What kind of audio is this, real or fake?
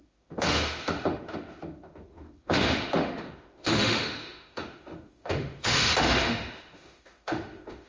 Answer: fake